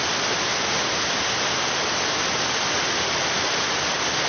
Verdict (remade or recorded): recorded